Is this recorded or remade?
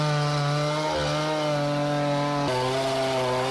recorded